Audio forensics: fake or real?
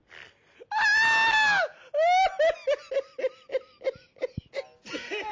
real